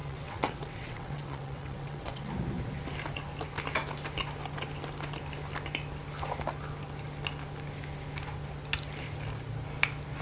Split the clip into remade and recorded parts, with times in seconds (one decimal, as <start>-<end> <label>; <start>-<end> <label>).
0.0-2.3 remade; 2.3-10.2 recorded